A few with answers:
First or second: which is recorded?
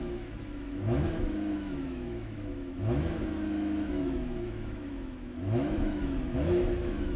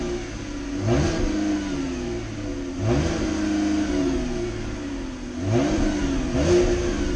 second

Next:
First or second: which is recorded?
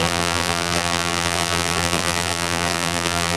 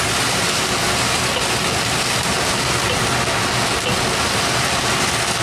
second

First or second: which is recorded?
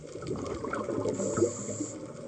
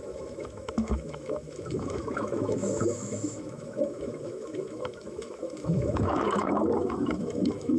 first